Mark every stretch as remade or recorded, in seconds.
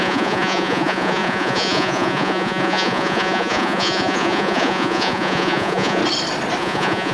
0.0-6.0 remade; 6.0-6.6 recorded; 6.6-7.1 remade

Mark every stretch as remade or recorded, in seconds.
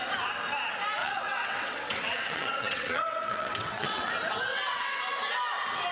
0.0-1.0 recorded; 1.0-4.1 remade; 4.1-4.5 recorded; 4.5-5.0 remade; 5.0-5.9 recorded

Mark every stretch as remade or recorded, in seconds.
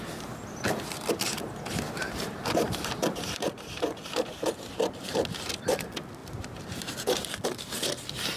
0.0-2.0 recorded; 2.0-5.0 remade; 5.0-6.2 recorded; 6.2-7.3 remade; 7.3-8.4 recorded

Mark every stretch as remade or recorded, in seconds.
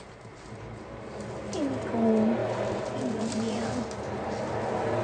0.0-5.0 recorded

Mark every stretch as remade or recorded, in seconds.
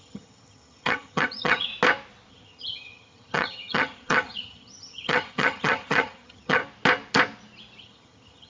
0.0-1.7 remade; 1.7-2.3 recorded; 2.3-6.6 remade; 6.6-7.8 recorded; 7.8-8.5 remade